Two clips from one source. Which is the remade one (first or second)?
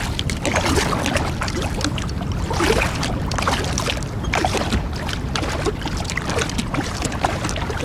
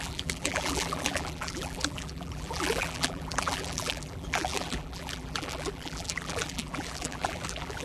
second